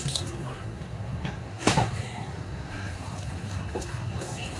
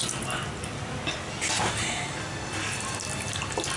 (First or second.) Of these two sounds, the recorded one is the second